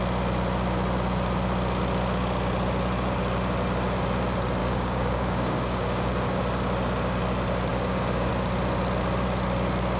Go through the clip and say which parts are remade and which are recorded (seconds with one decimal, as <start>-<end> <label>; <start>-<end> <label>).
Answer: 0.0-4.6 recorded; 4.6-6.4 remade; 6.4-7.7 recorded; 7.7-8.3 remade; 8.3-10.0 recorded